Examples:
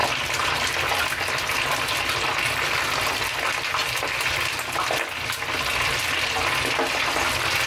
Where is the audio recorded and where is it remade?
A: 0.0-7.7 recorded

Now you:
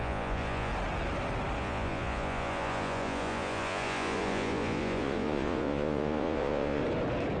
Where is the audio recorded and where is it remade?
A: 0.0-0.7 remade; 0.7-1.6 recorded; 1.6-6.8 remade; 6.8-7.4 recorded

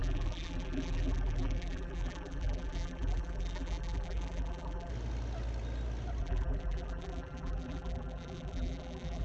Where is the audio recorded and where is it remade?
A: 0.0-4.9 remade; 4.9-6.2 recorded; 6.2-9.2 remade

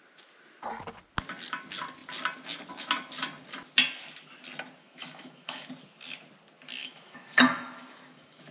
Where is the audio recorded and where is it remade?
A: 0.0-4.8 recorded; 4.8-5.7 remade; 5.7-6.8 recorded; 6.8-8.5 remade